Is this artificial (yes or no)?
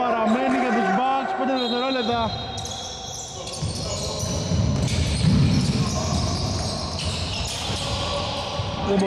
no